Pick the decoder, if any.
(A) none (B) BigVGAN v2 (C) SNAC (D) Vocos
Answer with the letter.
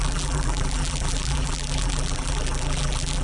B